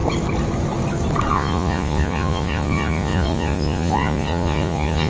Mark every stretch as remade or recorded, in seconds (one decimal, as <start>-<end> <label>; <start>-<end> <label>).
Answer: 0.0-1.3 recorded; 1.3-5.1 remade